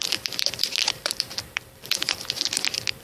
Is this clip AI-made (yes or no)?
yes